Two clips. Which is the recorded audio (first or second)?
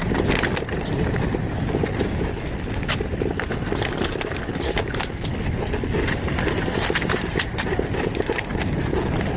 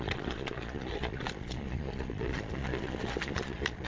first